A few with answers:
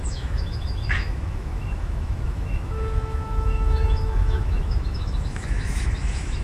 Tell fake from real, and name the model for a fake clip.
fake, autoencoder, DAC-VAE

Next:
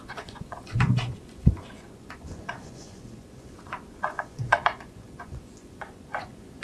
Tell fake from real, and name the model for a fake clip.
fake, vocoder, Vocos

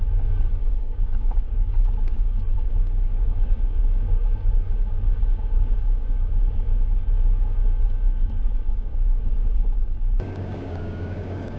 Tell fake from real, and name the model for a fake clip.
fake, codec, DAC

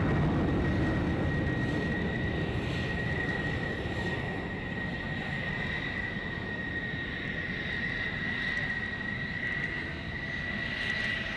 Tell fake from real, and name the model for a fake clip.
real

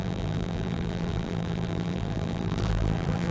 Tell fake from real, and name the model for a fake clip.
fake, vocoder, BigVGAN v2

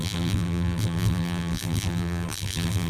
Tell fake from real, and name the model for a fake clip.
fake, vocoder, BigVGAN v2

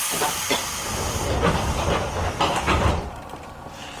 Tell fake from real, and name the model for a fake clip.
real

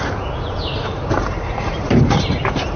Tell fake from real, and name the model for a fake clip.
real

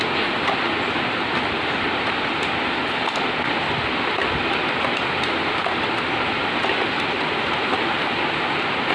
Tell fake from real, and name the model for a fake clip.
real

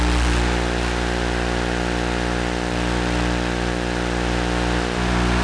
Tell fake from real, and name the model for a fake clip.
real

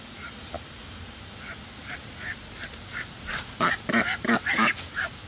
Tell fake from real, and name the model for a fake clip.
real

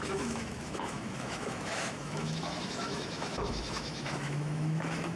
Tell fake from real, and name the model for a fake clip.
fake, autoencoder, DAC-VAE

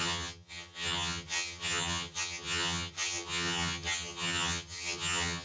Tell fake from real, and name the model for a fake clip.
fake, vocoder, HiFi-GAN